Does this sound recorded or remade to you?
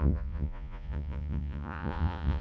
remade